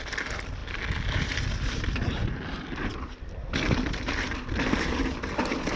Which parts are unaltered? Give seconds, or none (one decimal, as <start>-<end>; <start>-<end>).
0.0-5.8